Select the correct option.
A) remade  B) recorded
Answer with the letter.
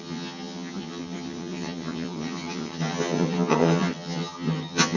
A